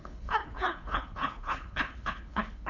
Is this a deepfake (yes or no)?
yes